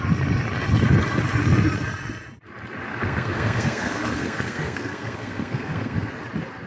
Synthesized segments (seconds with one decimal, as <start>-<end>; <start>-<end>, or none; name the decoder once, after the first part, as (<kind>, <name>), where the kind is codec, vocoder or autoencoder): 2.9-6.1 (codec, SNAC)